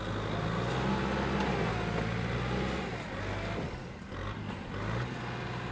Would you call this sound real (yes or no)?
yes